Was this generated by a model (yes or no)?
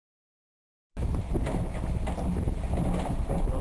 no